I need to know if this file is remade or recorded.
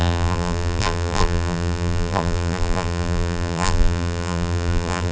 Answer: remade